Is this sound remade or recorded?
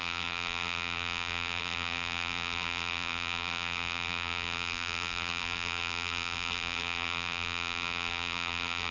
remade